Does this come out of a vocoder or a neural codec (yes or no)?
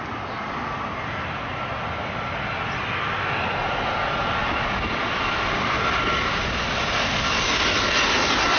no